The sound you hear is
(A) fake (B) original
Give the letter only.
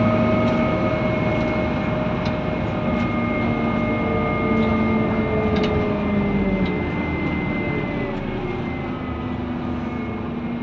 B